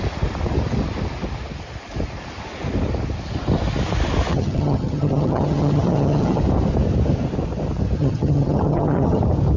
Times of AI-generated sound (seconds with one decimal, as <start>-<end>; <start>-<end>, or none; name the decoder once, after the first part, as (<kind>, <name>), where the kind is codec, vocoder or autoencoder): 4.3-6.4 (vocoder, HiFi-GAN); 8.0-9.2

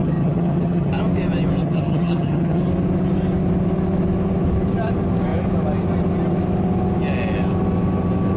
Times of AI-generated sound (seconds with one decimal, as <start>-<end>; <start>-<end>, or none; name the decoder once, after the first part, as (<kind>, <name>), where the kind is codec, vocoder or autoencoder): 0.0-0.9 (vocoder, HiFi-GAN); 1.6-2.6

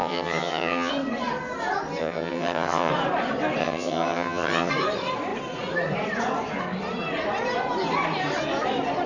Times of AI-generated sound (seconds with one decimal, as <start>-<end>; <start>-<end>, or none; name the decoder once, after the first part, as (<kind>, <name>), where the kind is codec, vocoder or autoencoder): 0.0-0.9 (vocoder, HiFi-GAN); 2.0-2.9; 3.6-4.7

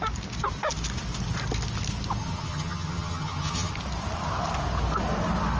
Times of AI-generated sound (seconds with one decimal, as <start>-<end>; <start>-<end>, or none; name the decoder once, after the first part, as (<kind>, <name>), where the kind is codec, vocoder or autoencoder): 2.2-3.7 (vocoder, HiFi-GAN)

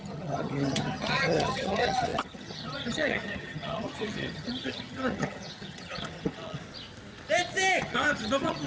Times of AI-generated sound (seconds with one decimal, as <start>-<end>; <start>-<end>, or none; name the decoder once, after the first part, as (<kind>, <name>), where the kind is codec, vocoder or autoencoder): 0.0-6.6 (vocoder, HiFi-GAN); 7.8-8.7